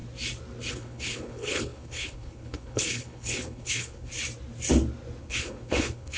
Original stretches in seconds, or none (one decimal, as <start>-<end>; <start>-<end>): 0.0-0.7; 4.1-5.2